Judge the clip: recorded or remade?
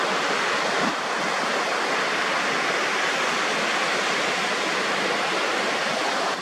recorded